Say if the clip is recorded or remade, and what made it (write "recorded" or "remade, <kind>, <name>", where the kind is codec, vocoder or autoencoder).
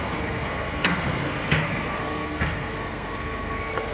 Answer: remade, codec, SNAC